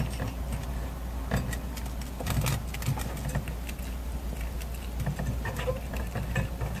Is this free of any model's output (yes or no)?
yes